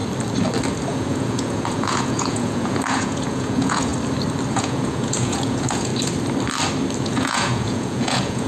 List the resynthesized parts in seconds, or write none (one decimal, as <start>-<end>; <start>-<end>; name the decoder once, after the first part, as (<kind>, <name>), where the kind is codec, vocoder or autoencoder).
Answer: 0.9-3.9 (vocoder, Vocos); 4.5-5.9; 7.0-8.5